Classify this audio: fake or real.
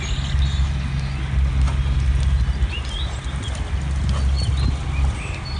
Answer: real